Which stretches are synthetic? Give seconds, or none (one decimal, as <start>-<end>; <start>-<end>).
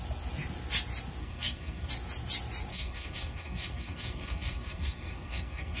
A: 1.2-1.9; 2.7-5.8